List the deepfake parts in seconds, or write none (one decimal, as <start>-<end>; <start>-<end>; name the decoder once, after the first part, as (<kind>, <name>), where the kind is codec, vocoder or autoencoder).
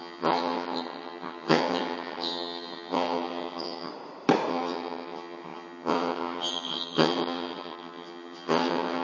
0.0-3.9 (vocoder, HiFi-GAN); 4.5-9.0